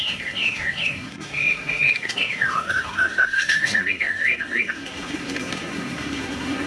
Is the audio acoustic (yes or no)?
no